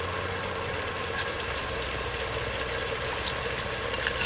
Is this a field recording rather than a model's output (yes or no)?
yes